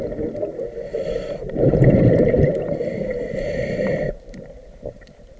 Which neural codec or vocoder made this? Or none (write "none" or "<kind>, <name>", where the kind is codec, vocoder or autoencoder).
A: vocoder, BigVGAN v2